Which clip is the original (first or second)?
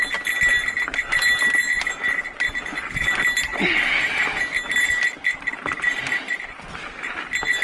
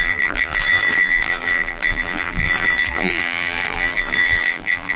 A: first